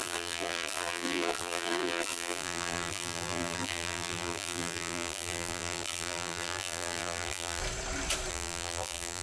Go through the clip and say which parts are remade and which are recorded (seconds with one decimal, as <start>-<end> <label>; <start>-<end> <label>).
0.0-7.6 remade; 7.6-8.3 recorded; 8.3-9.2 remade